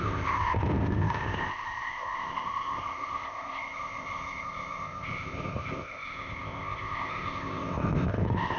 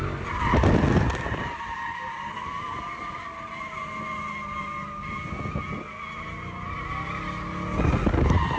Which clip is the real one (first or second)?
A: second